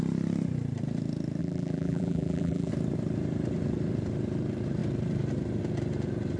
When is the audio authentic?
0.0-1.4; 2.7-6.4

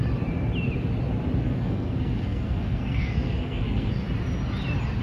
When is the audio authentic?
0.0-1.4; 3.9-5.0